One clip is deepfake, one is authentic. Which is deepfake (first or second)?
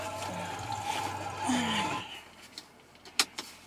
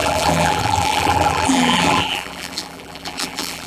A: second